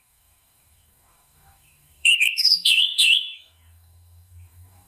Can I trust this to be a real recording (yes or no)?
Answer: no